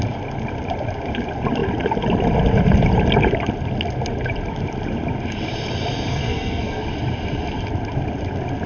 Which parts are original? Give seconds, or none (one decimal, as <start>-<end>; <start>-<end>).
0.0-6.1; 6.8-8.7